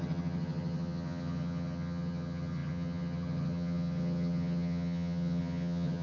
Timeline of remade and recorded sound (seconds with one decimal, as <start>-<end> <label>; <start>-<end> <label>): 0.0-6.0 remade